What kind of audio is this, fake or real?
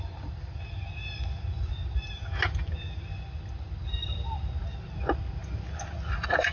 real